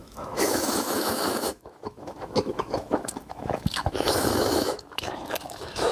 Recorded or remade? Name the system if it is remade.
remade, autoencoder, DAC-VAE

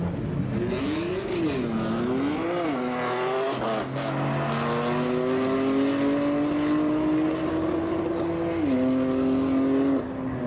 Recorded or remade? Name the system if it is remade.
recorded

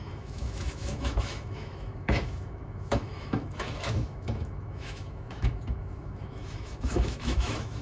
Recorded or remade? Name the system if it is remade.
remade, autoencoder, DAC-VAE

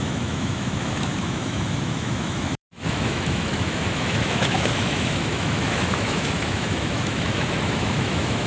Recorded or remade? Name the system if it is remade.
remade, autoencoder, DAC-VAE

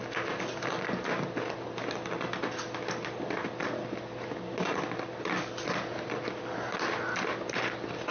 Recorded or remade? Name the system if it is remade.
recorded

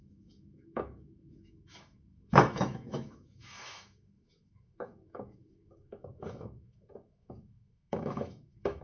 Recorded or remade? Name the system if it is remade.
remade, autoencoder, DAC-VAE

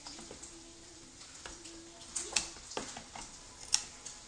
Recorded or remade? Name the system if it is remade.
recorded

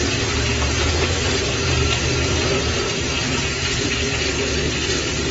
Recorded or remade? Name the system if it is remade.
recorded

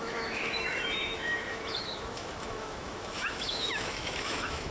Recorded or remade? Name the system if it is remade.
remade, autoencoder, DAC-VAE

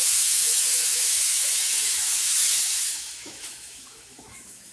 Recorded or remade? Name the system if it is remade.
remade, autoencoder, DAC-VAE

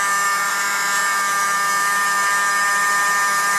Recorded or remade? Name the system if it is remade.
remade, autoencoder, DAC-VAE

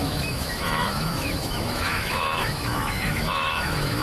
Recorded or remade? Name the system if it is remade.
remade, autoencoder, DAC-VAE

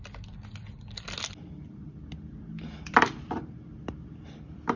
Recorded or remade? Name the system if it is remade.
recorded